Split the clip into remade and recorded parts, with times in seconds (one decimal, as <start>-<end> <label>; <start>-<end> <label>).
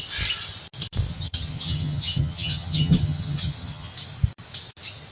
0.0-1.1 recorded; 1.1-3.9 remade; 3.9-5.1 recorded